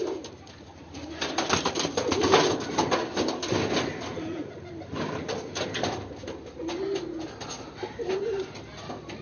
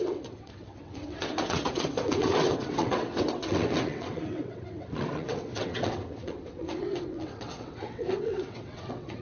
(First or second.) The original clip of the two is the first